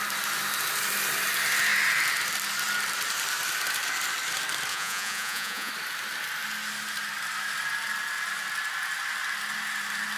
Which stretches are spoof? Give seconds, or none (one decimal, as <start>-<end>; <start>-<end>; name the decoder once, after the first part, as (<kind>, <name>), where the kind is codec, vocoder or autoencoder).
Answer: 4.7-5.7 (vocoder, Vocos)